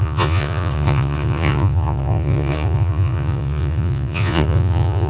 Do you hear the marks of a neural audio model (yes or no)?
yes